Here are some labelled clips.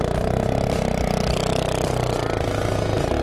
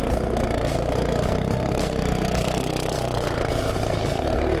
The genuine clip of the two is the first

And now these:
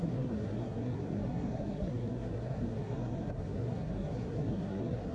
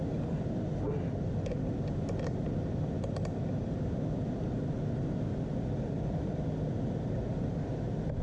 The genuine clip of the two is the second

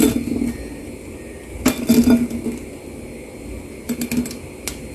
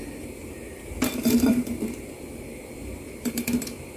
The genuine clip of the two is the first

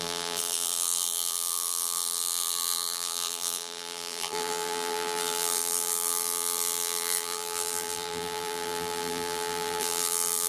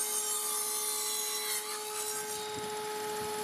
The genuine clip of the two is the second